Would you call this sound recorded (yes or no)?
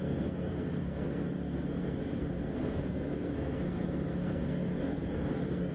no